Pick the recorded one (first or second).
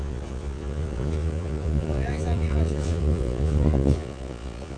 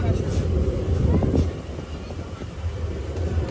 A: second